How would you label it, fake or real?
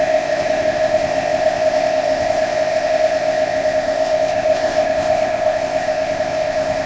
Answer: fake